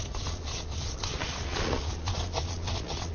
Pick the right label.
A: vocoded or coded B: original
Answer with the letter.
A